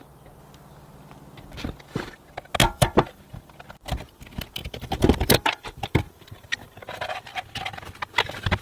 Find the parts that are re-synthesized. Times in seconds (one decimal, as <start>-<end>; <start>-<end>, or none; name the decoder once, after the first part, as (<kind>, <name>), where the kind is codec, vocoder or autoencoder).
2.6-3.2 (vocoder, BigVGAN v2); 4.6-7.0

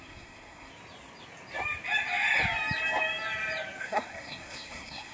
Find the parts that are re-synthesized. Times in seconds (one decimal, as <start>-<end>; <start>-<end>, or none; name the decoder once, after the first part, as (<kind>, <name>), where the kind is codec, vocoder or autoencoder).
0.0-0.7 (codec, SNAC); 3.8-5.1

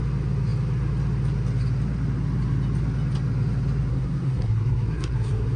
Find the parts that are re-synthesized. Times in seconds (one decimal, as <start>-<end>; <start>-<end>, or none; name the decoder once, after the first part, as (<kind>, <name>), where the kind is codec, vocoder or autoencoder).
3.9-5.6 (codec, SNAC)